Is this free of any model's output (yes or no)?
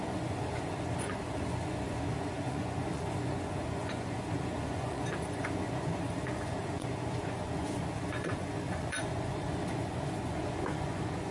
no